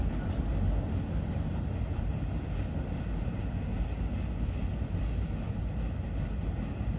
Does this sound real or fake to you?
real